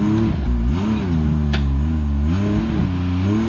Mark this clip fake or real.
real